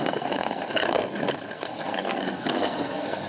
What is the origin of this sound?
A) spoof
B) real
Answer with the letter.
A